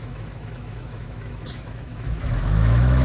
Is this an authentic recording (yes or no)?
no